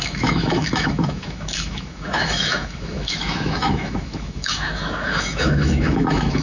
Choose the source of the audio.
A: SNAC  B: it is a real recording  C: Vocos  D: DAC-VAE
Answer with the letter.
D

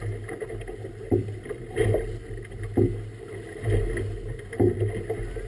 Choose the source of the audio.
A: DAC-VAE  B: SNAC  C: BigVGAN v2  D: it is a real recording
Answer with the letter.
D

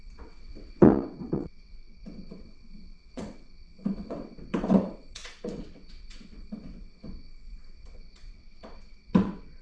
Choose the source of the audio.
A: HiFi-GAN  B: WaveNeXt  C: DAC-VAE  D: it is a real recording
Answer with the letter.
B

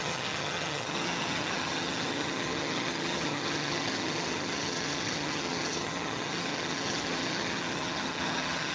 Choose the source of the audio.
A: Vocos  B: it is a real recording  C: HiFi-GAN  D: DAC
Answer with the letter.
C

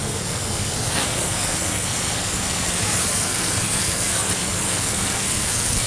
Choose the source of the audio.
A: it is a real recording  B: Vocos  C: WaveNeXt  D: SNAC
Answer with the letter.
D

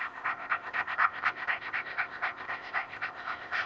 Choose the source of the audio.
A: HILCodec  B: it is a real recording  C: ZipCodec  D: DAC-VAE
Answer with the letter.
C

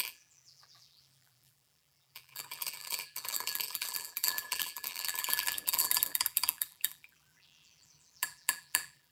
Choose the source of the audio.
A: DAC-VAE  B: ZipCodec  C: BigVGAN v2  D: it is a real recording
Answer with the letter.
C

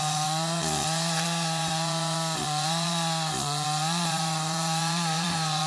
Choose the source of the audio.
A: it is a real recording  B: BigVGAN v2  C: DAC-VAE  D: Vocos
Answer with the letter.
D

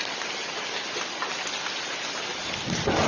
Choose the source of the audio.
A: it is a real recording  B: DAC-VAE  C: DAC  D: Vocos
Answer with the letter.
A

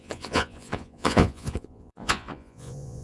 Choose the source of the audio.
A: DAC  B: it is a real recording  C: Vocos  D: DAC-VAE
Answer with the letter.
C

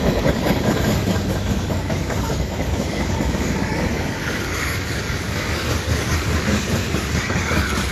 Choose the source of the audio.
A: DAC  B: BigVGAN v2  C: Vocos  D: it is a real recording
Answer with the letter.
A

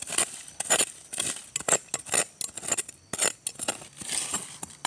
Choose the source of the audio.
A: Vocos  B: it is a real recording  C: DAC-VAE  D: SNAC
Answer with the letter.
B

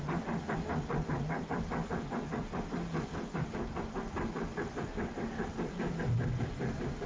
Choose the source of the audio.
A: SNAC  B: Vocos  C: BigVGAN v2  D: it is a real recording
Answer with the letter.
D